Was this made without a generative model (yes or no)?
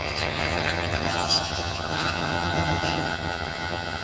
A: no